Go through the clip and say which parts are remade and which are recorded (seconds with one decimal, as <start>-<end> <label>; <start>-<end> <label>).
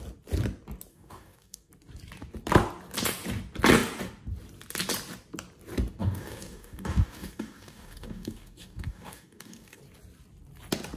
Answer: 0.0-0.9 recorded; 0.9-1.7 remade; 1.7-6.0 recorded; 6.0-9.8 remade; 9.8-11.0 recorded